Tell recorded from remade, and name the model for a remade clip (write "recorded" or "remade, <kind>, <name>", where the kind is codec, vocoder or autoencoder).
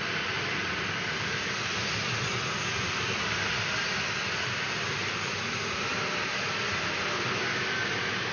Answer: recorded